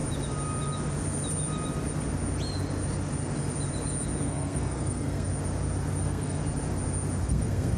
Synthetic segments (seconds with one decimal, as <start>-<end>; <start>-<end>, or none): 4.2-5.3; 6.0-6.4; 7.2-7.8